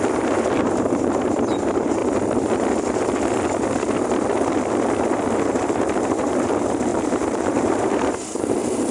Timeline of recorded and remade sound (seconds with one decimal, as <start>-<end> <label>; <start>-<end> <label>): 0.0-2.0 remade; 2.0-5.4 recorded; 5.4-8.9 remade